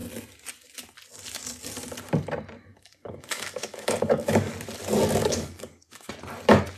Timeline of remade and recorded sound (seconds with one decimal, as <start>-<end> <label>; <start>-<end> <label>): 0.0-2.7 recorded; 2.7-4.5 remade; 4.5-5.2 recorded; 5.2-6.1 remade; 6.1-6.8 recorded